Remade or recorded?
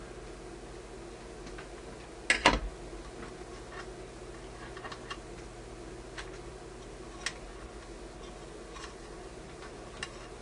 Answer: recorded